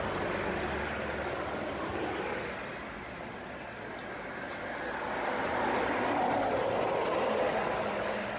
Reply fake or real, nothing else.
real